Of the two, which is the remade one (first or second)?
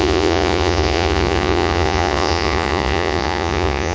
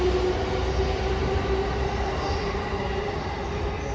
first